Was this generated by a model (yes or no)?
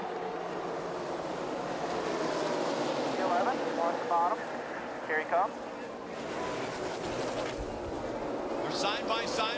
no